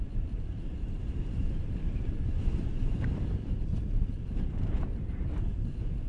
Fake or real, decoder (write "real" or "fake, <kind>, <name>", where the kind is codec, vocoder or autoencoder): fake, vocoder, BigVGAN v2